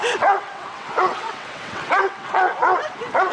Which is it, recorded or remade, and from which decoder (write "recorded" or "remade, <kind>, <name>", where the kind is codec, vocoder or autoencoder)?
remade, vocoder, WaveNeXt